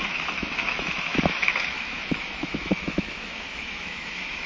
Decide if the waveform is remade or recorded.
remade